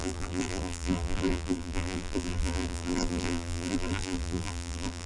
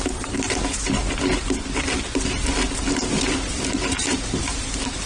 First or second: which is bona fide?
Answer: second